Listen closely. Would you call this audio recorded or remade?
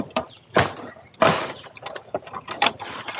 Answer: recorded